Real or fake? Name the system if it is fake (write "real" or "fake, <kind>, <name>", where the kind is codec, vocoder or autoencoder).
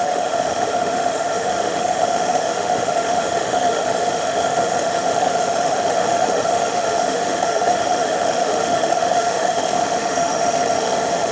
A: fake, autoencoder, DAC-VAE